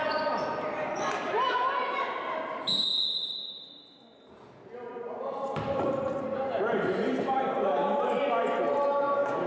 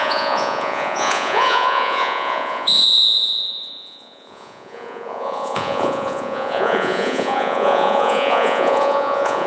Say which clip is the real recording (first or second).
first